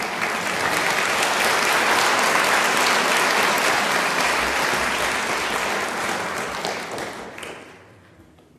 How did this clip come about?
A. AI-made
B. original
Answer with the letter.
B